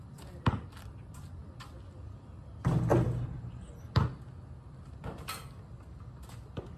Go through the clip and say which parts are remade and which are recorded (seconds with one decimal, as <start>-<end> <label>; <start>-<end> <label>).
0.0-6.8 recorded